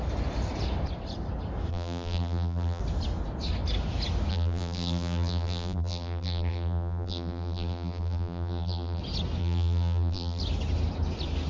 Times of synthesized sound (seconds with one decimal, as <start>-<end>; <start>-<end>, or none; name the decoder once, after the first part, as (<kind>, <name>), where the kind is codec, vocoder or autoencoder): 1.7-2.8 (vocoder, BigVGAN v2); 4.3-9.0; 9.4-10.4